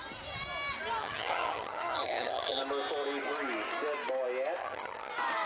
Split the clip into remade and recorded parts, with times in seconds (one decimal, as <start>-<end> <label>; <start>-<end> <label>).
0.0-1.0 recorded; 1.0-2.6 remade; 2.6-4.6 recorded; 4.6-5.1 remade; 5.1-5.5 recorded